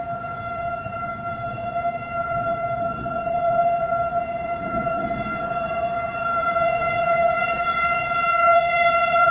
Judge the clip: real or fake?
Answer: fake